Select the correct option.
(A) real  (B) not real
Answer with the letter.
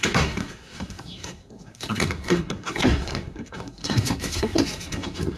B